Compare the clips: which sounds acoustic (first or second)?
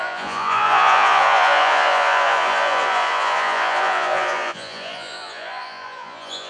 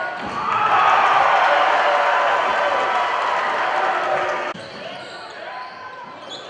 second